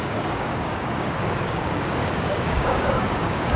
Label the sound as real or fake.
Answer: fake